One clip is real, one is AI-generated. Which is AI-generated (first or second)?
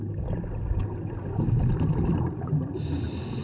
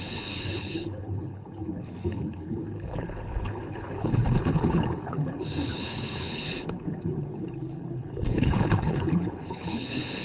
second